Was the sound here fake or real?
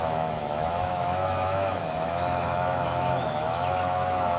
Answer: fake